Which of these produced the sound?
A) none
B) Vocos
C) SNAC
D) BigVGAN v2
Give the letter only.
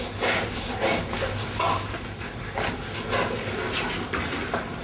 A